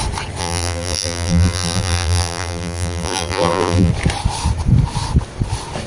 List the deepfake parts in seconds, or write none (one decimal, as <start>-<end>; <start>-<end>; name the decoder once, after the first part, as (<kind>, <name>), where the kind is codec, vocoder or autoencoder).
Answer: 0.4-3.9 (vocoder, BigVGAN v2)